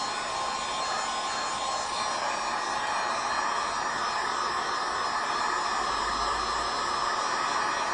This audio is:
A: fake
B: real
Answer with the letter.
B